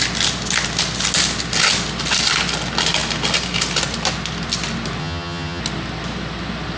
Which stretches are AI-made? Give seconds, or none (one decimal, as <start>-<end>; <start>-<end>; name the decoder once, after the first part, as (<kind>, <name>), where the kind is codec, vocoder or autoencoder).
5.0-5.6 (vocoder, HiFi-GAN)

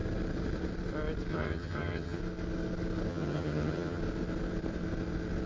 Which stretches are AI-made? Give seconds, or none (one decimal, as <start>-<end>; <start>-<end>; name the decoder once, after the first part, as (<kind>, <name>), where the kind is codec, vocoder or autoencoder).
1.3-2.2 (vocoder, HiFi-GAN); 3.1-4.0